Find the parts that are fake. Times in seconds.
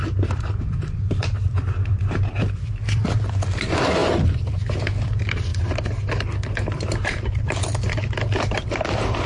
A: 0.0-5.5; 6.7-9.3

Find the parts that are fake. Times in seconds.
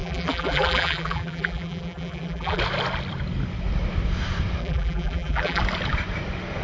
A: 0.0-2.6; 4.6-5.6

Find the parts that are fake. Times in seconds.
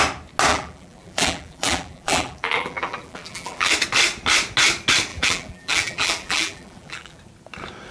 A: 0.5-3.7; 5.1-7.2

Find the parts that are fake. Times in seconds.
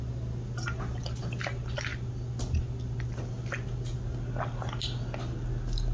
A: none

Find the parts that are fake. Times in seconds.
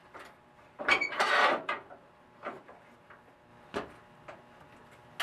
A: 0.0-3.1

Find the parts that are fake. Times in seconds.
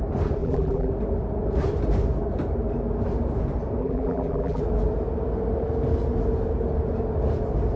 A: 0.4-0.9; 3.8-4.6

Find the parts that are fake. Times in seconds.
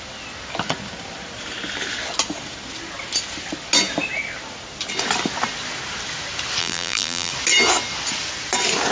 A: 6.6-7.3